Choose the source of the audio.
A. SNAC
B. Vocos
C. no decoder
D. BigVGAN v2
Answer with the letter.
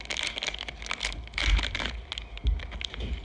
C